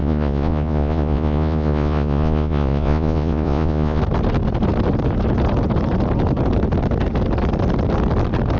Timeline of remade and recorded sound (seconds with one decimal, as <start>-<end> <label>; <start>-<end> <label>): 0.0-4.0 remade; 4.0-8.6 recorded